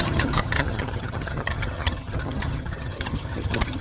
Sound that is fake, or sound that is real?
fake